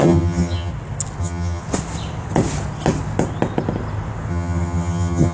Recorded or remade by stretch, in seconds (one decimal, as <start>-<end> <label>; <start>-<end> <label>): 0.0-0.7 remade; 0.7-1.2 recorded; 1.2-1.6 remade; 1.6-4.3 recorded; 4.3-5.3 remade